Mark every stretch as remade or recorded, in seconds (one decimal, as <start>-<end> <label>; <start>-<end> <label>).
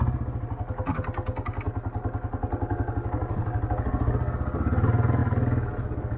0.0-6.2 recorded